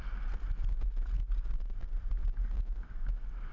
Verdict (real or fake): real